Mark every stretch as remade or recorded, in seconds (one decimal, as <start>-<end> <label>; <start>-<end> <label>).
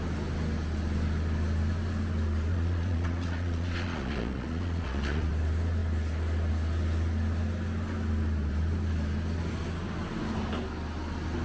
0.0-2.5 recorded; 2.5-5.3 remade; 5.3-11.4 recorded